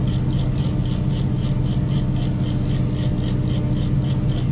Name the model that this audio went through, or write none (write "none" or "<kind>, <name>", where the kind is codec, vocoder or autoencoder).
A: none